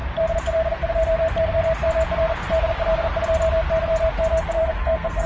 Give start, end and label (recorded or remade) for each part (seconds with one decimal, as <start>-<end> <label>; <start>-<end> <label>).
0.0-4.6 recorded; 4.6-5.3 remade